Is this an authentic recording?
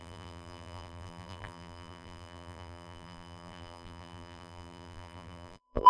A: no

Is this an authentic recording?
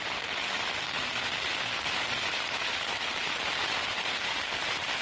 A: no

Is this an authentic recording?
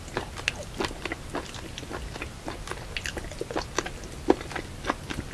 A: yes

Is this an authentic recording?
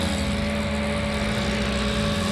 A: yes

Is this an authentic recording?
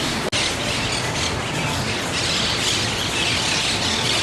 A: yes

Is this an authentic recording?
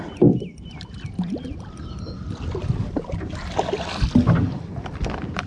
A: yes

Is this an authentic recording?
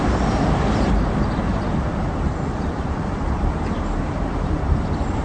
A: no